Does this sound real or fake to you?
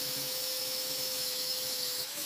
fake